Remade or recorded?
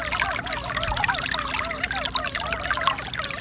recorded